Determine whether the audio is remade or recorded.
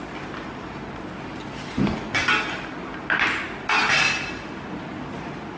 recorded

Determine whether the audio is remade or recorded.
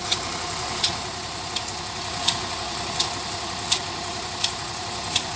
remade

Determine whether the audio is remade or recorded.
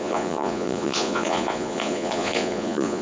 remade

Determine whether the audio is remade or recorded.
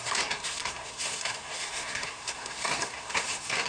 remade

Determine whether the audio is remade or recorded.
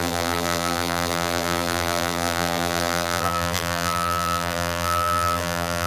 remade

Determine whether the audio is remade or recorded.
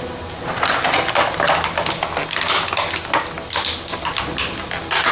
recorded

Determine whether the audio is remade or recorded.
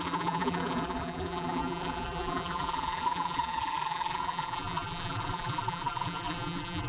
remade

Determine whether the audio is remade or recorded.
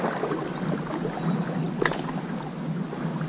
recorded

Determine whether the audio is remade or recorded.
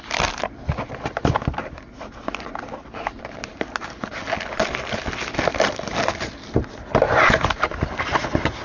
recorded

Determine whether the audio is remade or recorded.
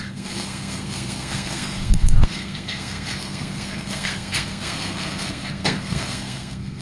remade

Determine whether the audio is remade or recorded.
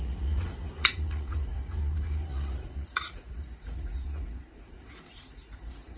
remade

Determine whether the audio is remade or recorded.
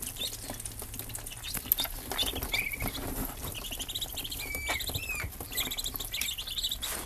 recorded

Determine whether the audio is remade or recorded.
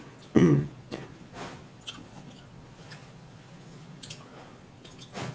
remade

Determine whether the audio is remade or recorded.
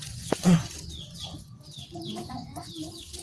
remade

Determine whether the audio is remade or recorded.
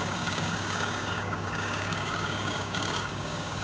remade